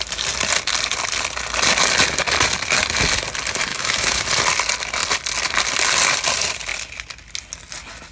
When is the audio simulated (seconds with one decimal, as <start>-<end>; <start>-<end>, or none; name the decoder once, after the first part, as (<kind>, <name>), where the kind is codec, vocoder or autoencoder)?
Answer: 3.7-4.2 (autoencoder, DAC-VAE)